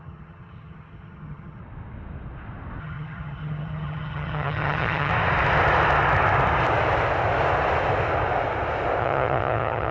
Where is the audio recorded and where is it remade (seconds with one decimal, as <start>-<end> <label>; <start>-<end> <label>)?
0.0-1.6 remade; 1.6-2.8 recorded; 2.8-5.1 remade; 5.1-9.0 recorded; 9.0-9.9 remade